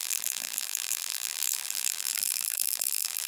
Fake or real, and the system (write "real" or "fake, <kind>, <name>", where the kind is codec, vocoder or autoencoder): fake, vocoder, BigVGAN v2